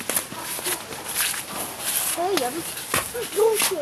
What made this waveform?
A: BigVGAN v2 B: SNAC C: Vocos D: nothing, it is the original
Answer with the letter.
D